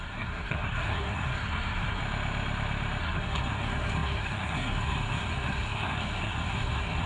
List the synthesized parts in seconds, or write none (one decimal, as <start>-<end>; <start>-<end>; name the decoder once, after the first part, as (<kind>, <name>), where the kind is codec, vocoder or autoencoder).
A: 0.0-2.0 (codec, SNAC); 3.0-7.1